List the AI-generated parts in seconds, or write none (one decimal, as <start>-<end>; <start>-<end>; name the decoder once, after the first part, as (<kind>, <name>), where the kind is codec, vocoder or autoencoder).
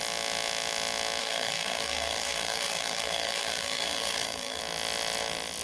1.2-4.6 (codec, SNAC)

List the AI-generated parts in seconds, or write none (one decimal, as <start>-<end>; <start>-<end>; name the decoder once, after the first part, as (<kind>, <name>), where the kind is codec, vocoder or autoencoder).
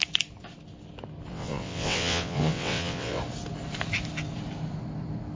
1.3-3.2 (vocoder, WaveNeXt)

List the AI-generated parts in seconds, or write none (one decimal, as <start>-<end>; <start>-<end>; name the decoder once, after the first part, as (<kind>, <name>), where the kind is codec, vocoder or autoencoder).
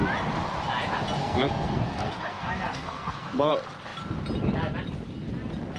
1.2-3.5 (codec, SNAC)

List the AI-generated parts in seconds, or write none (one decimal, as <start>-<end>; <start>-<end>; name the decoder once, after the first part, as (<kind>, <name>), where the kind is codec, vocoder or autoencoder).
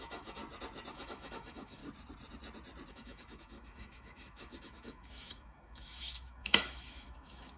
0.0-0.4 (autoencoder, DAC-VAE); 0.9-1.8; 2.9-7.6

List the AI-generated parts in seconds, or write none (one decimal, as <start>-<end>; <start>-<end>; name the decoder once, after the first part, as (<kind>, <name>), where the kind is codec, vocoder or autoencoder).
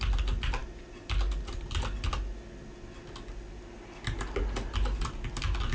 none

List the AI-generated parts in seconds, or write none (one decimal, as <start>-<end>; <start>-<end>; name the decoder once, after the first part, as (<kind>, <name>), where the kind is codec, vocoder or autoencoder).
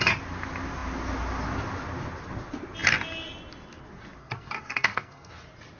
4.2-5.3 (codec, SNAC)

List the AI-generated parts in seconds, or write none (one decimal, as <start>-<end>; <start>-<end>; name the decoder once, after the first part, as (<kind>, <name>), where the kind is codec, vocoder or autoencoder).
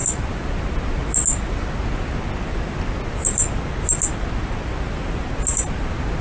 none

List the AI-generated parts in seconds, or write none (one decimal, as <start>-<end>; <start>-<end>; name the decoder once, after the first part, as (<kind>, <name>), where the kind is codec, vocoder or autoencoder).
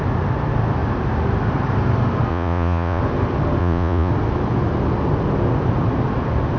2.3-3.0 (vocoder, Vocos); 3.6-4.1